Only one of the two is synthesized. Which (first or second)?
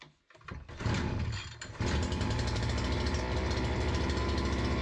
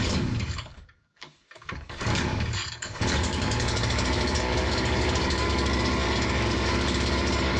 second